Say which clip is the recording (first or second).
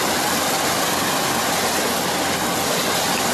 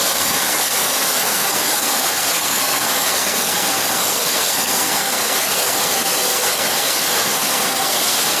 first